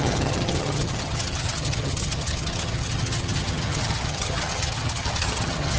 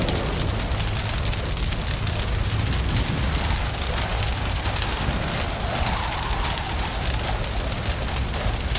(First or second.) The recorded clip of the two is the second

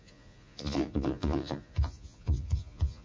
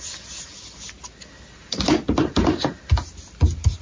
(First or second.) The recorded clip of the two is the second